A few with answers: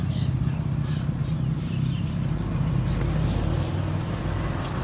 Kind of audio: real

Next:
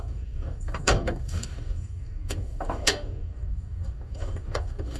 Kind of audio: fake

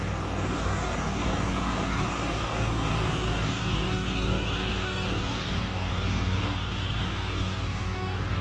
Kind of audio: fake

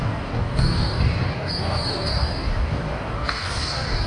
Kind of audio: fake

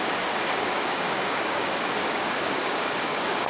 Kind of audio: fake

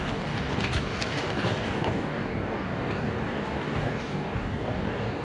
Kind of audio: fake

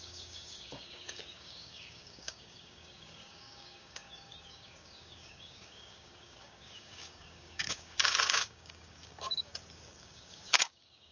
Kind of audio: fake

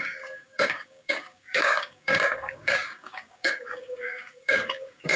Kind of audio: fake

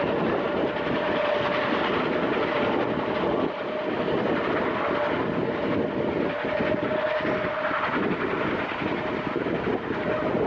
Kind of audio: real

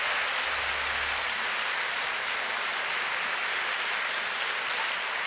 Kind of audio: real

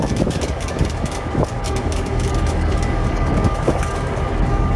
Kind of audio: fake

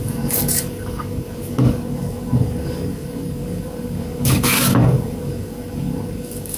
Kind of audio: fake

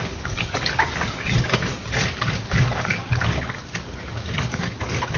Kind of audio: fake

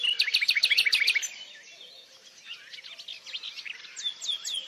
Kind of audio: real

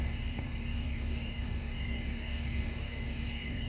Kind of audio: fake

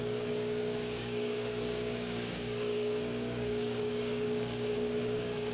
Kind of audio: fake